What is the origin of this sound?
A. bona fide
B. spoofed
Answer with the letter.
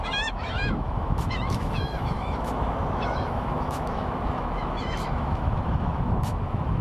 B